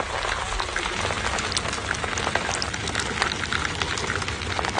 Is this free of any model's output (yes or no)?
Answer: yes